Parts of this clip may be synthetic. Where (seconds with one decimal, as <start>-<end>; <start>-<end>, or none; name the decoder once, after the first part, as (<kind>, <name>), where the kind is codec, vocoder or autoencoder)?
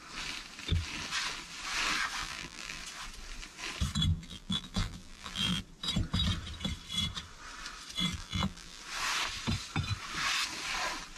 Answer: 2.2-2.8 (vocoder, BigVGAN v2); 4.1-5.6; 8.1-8.8